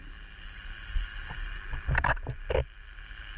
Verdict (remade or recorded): recorded